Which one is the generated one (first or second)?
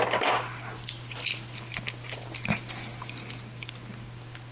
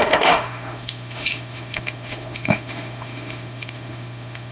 second